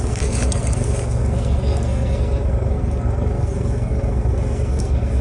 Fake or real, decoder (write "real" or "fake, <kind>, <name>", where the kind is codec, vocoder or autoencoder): fake, codec, SNAC